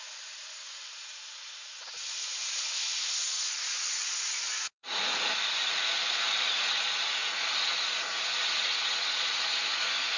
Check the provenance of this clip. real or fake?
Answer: fake